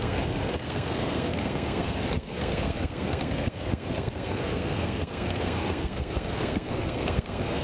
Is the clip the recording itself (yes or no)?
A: no